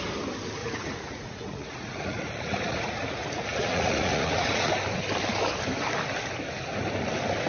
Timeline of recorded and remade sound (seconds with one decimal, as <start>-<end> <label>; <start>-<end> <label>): 0.0-0.6 recorded; 0.6-4.7 remade; 4.7-7.5 recorded